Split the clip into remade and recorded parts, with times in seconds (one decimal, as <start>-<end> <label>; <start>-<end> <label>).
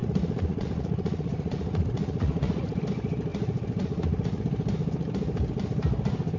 0.0-2.8 remade; 2.8-3.3 recorded; 3.3-4.4 remade; 4.4-6.4 recorded